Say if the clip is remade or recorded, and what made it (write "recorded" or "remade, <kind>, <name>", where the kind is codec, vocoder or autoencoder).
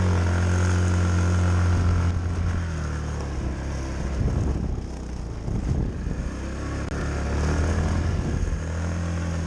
recorded